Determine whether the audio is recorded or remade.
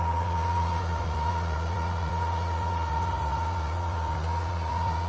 remade